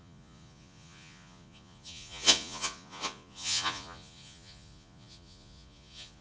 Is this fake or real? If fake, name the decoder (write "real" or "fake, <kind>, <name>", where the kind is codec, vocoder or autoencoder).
fake, vocoder, Vocos